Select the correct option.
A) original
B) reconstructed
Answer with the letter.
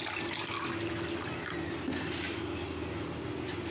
A